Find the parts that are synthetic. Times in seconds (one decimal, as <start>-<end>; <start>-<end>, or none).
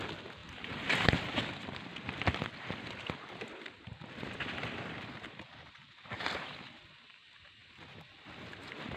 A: 0.4-1.4